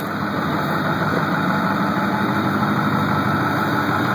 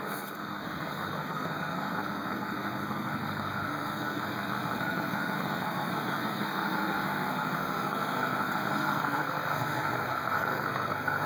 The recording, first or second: first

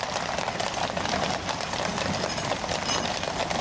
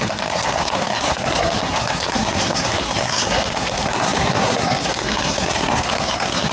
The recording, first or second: first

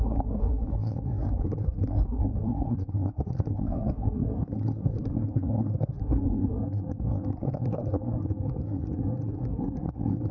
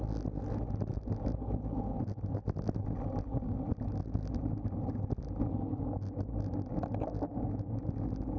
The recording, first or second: second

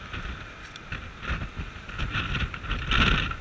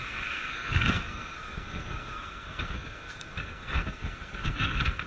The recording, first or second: first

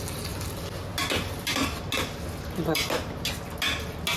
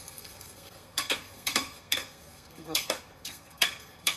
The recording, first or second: first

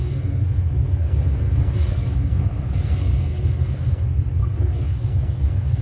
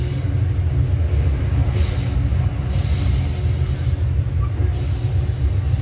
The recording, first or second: second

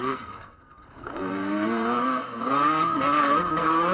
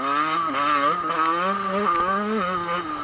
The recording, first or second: second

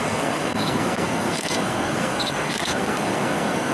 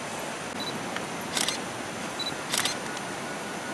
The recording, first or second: second